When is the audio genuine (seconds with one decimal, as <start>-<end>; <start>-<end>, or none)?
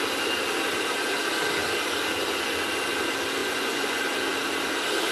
0.0-3.4; 4.0-5.1